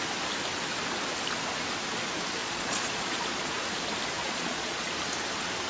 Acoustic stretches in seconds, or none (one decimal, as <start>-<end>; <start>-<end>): 0.0-2.4; 3.5-4.2; 4.9-5.7